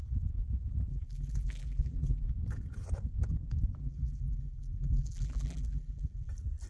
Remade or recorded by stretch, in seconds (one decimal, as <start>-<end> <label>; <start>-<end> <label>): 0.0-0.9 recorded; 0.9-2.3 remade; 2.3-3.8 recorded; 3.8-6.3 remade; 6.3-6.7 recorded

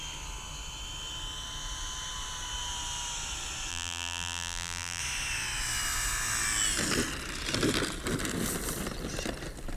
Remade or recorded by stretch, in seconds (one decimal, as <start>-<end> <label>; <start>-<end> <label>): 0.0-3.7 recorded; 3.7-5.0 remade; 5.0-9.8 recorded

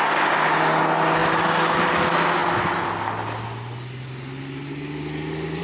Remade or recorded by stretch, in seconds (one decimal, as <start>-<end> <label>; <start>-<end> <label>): 0.0-1.2 recorded; 1.2-1.9 remade; 1.9-5.6 recorded

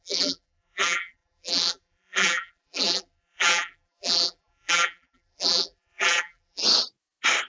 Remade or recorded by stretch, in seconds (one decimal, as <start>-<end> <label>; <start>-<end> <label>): 0.0-6.6 remade; 6.6-7.5 recorded

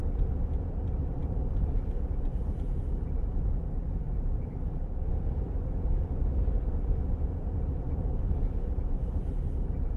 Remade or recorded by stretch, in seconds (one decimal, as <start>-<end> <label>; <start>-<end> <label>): 0.0-10.0 recorded

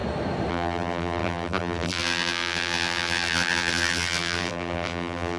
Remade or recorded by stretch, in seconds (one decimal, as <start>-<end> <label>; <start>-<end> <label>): 0.0-0.5 recorded; 0.5-5.4 remade